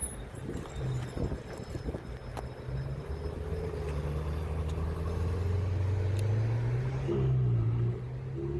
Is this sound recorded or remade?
recorded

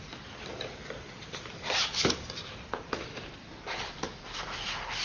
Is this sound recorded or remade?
recorded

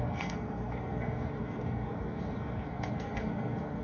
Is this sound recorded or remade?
remade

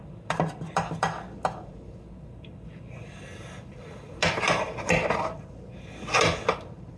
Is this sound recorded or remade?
recorded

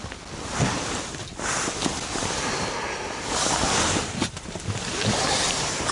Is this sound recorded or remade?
recorded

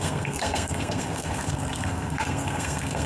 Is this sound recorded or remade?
remade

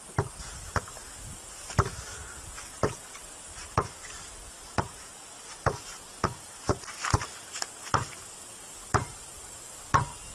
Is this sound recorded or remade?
recorded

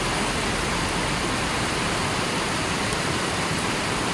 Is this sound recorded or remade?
recorded